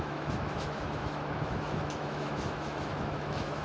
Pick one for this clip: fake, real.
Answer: fake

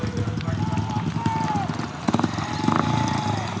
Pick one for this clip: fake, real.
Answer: real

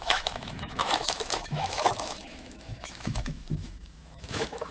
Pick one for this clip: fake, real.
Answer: fake